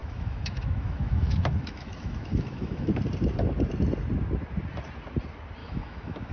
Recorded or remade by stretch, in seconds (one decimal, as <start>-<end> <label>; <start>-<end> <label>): 0.0-2.9 remade; 2.9-5.6 recorded; 5.6-6.3 remade